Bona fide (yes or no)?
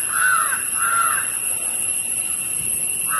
yes